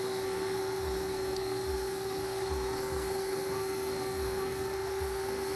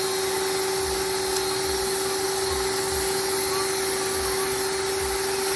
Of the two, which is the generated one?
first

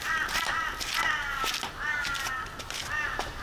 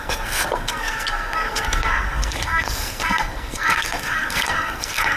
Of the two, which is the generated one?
second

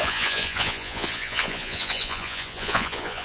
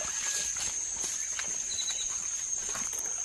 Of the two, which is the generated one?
first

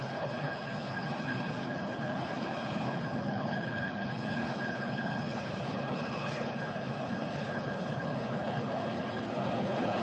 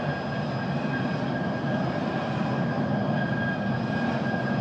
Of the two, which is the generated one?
first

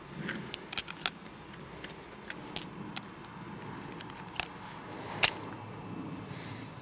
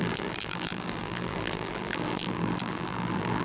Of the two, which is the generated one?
second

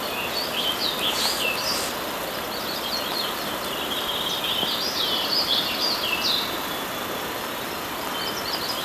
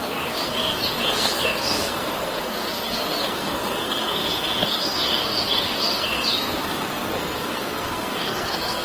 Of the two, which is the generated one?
second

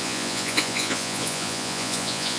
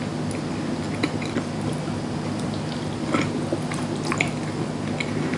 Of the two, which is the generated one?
first